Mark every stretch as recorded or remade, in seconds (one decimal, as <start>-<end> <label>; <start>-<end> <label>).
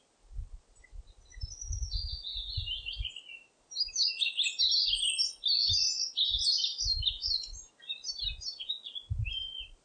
0.0-9.8 recorded